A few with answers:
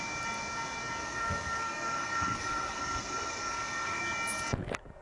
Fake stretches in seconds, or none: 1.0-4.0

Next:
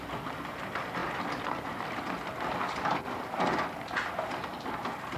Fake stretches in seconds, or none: none

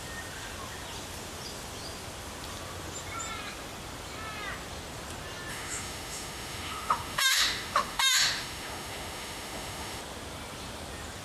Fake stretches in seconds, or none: 5.5-10.0